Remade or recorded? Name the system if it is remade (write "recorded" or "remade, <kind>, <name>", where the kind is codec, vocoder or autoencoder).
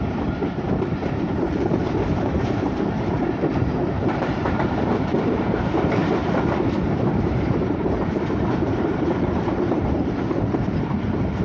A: remade, vocoder, BigVGAN v2